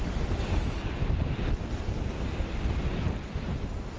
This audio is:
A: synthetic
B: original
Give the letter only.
B